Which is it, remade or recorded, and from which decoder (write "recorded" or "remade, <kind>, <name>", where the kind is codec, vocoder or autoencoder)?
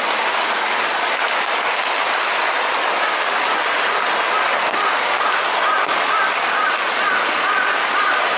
recorded